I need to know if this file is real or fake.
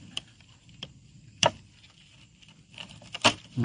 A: fake